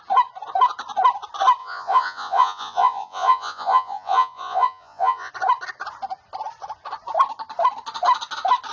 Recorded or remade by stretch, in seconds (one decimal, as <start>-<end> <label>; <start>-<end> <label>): 0.0-1.6 recorded; 1.6-5.3 remade; 5.3-8.7 recorded